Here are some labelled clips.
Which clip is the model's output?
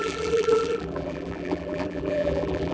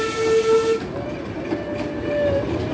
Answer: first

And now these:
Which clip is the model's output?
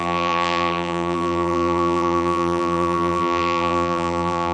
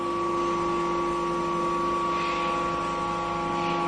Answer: first